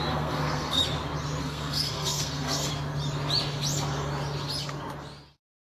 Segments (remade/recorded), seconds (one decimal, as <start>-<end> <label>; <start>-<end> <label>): 0.0-0.8 remade; 0.8-1.4 recorded; 1.4-2.7 remade; 2.7-5.6 recorded